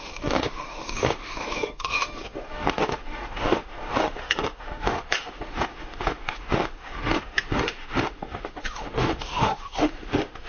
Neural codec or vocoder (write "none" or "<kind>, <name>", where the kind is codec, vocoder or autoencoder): autoencoder, DAC-VAE